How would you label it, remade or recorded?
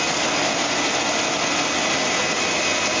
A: recorded